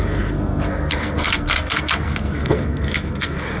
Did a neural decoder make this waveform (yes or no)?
yes